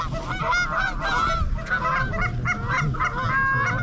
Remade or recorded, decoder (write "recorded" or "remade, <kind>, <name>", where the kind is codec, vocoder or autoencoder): recorded